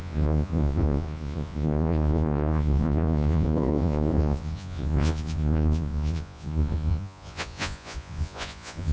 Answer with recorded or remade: remade